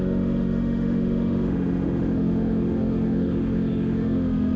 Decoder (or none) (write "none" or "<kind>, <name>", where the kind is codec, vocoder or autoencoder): autoencoder, DAC-VAE